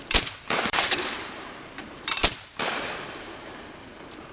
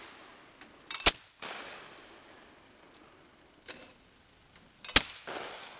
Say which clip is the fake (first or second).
first